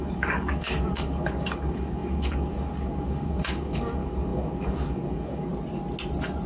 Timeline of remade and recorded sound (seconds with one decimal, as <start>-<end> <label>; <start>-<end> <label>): 0.0-5.5 remade; 5.5-6.5 recorded